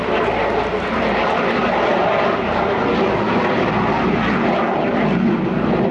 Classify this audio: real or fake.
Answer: real